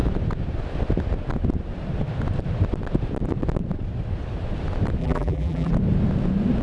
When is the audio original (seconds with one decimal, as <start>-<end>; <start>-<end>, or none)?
0.0-5.0; 5.7-6.6